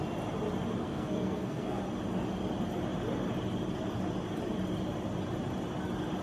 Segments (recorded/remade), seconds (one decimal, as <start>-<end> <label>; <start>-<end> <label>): 0.0-0.8 recorded; 0.8-1.8 remade; 1.8-6.2 recorded